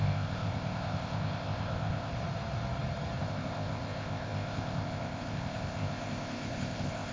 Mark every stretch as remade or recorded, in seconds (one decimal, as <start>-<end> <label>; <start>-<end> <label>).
0.0-2.1 remade; 2.1-3.2 recorded; 3.2-7.1 remade